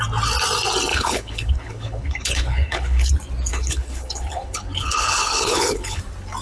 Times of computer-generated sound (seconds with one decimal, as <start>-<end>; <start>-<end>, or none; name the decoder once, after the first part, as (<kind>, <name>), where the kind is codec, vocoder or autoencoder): 0.9-3.1 (codec, HILCodec); 3.5-6.0